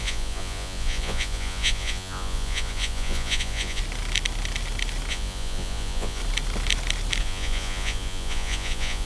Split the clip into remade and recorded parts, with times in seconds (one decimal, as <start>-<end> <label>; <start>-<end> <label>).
0.0-3.8 remade; 3.8-5.1 recorded; 5.1-6.2 remade; 6.2-7.2 recorded; 7.2-9.1 remade